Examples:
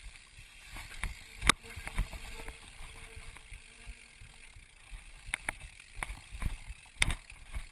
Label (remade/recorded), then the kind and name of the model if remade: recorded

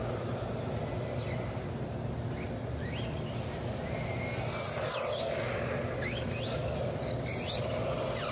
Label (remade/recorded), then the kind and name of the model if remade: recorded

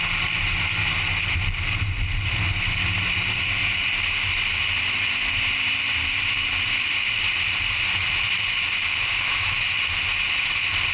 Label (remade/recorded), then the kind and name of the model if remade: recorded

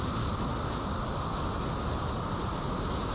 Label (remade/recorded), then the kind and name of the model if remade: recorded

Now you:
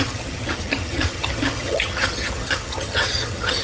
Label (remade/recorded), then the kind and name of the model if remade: remade, vocoder, HiFi-GAN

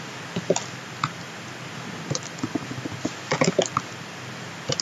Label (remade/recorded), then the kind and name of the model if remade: recorded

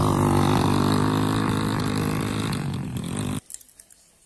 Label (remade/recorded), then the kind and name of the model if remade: recorded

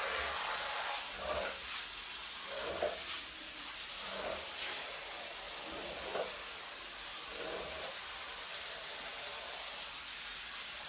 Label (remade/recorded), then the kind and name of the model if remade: recorded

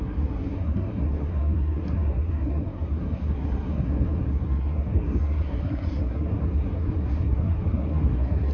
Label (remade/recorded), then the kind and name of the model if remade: remade, codec, SNAC